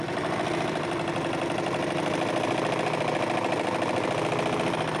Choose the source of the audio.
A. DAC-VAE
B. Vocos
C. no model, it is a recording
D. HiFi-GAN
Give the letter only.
C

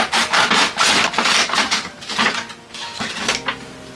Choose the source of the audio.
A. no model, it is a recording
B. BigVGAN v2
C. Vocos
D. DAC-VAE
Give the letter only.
A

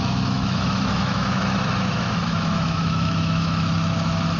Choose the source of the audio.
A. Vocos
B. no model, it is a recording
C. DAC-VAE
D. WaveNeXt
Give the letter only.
C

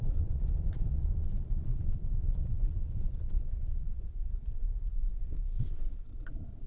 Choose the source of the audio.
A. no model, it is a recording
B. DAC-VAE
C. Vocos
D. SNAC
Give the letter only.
C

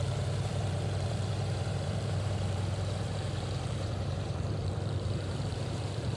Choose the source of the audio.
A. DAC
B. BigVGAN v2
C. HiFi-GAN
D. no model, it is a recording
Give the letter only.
B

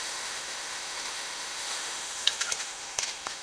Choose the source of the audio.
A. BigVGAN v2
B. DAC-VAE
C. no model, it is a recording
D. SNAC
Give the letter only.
B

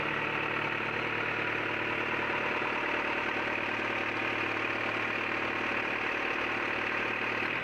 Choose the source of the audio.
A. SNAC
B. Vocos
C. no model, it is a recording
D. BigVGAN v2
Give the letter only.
C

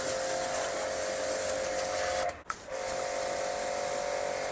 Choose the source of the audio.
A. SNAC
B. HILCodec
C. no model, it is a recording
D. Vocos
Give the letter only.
C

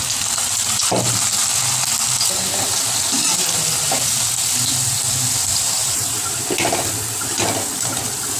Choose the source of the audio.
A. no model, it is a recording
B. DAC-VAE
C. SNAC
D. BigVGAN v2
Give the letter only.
A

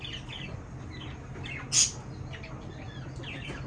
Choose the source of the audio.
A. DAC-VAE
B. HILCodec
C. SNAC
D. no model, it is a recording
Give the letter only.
D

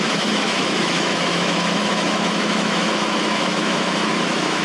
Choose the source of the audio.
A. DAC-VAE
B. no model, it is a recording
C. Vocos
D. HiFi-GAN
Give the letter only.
A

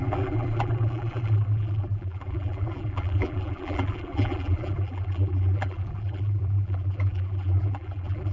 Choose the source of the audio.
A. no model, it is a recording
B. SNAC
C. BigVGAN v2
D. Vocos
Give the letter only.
C